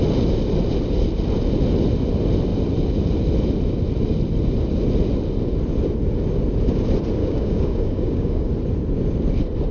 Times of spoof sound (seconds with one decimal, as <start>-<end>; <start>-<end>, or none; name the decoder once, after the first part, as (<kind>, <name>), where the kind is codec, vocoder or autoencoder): 7.2-8.5 (codec, DAC)